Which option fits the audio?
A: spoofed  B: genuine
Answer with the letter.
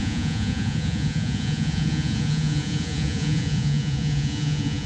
A